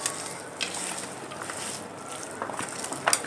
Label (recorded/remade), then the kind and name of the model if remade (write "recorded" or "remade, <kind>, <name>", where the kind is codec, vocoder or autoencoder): recorded